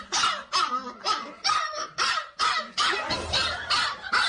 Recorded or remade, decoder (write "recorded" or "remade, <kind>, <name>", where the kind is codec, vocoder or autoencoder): recorded